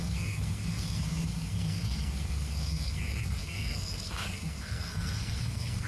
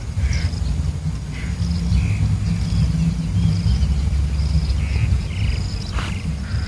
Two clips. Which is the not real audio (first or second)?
first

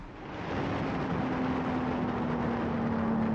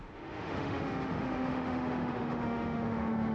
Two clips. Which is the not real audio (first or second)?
second